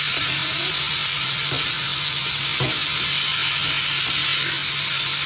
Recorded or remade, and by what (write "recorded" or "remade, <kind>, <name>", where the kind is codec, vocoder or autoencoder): recorded